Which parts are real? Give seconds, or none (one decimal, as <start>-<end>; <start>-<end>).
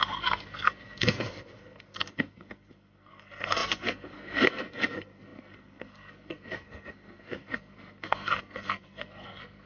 none